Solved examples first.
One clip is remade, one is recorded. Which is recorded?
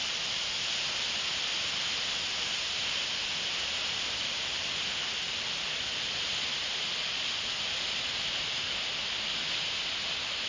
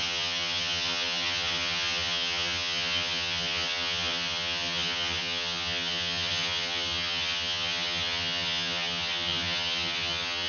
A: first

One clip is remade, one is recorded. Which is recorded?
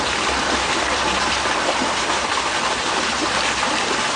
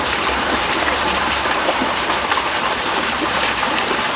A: first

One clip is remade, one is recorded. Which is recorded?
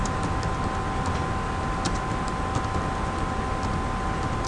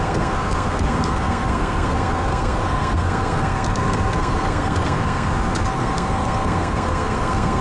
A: first